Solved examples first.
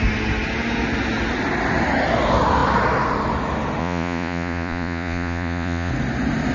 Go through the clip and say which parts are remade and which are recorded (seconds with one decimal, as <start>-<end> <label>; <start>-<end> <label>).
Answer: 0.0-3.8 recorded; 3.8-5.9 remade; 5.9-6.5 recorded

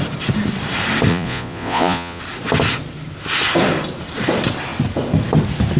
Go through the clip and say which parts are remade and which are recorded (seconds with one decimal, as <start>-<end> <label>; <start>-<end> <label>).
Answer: 0.0-1.1 recorded; 1.1-2.2 remade; 2.2-5.8 recorded

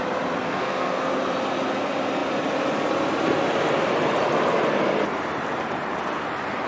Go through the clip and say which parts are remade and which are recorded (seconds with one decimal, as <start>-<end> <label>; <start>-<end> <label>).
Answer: 0.0-0.4 recorded; 0.4-1.0 remade; 1.0-6.7 recorded

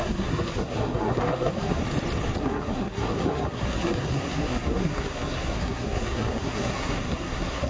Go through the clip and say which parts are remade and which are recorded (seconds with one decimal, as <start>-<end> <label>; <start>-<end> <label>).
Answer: 0.0-1.8 remade; 1.8-2.4 recorded; 2.4-7.7 remade

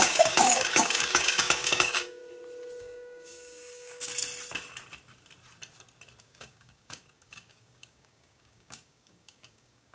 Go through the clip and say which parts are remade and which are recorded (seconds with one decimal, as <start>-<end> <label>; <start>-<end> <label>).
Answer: 0.0-2.2 remade; 2.2-2.8 recorded; 2.8-4.1 remade; 4.1-6.2 recorded; 6.2-9.9 remade

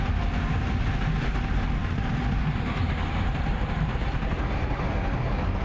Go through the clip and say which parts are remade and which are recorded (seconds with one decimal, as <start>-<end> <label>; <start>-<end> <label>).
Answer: 0.0-2.8 recorded; 2.8-4.4 remade; 4.4-5.6 recorded